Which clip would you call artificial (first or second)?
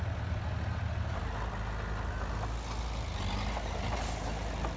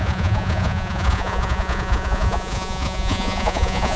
second